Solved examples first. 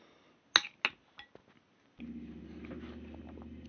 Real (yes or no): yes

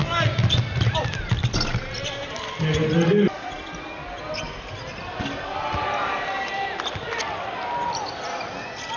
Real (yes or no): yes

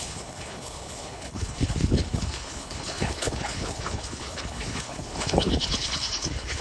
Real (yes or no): no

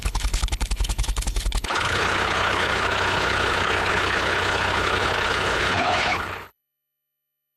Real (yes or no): no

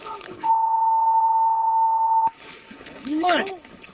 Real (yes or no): no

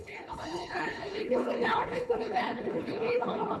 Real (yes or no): no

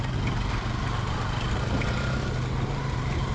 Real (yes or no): yes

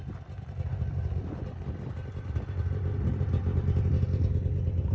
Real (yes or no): yes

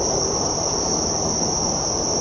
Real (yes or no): yes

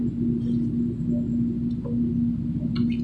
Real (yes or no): yes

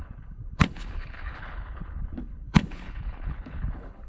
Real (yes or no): no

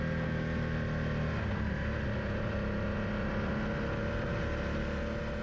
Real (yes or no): yes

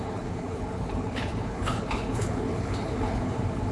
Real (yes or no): no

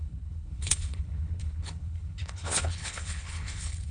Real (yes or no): no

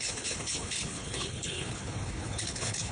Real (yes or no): no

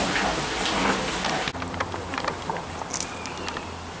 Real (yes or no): yes